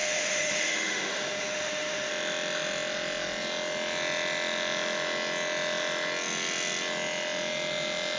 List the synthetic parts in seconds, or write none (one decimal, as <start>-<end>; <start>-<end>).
0.0-2.1